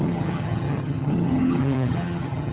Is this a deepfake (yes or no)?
yes